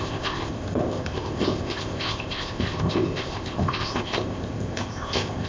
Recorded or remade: remade